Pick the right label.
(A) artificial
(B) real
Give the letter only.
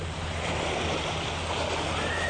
B